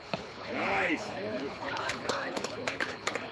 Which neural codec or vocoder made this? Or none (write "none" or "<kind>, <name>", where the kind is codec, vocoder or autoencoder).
codec, HILCodec